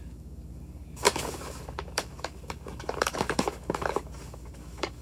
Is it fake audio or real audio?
fake